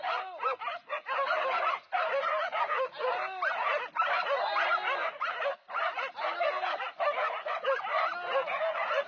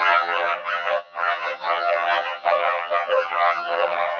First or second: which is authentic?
first